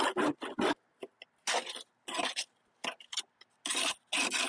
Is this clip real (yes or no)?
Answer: yes